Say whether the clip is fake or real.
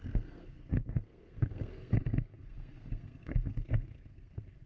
fake